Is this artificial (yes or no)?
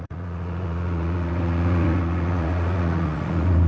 yes